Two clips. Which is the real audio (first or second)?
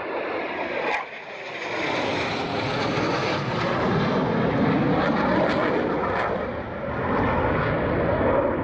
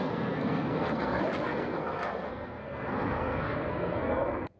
first